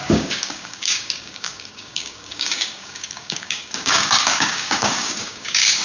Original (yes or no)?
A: no